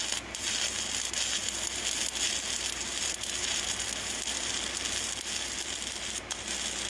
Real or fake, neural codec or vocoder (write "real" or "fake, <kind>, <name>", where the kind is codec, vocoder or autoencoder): real